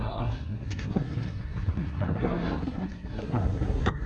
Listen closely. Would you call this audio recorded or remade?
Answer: remade